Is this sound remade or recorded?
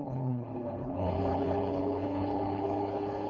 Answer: remade